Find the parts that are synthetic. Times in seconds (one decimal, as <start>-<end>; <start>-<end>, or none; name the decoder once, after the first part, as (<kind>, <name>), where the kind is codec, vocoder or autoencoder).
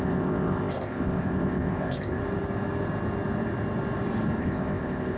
0.0-2.2 (codec, ZipCodec); 4.4-5.2